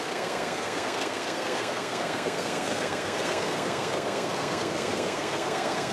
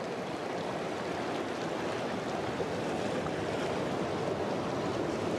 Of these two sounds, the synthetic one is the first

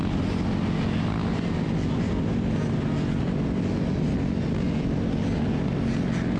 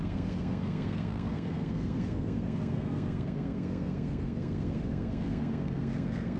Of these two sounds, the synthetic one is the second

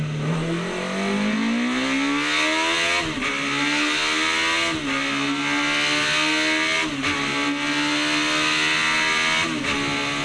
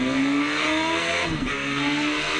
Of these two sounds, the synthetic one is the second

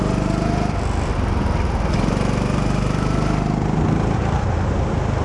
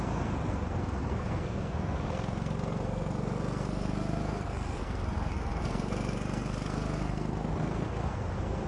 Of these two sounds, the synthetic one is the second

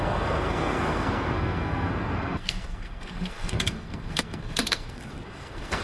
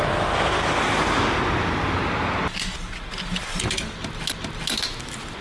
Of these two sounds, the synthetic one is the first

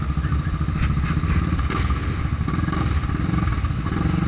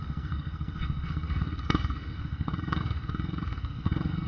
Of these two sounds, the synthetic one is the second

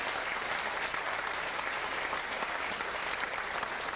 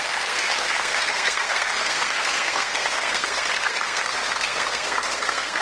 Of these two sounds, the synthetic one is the second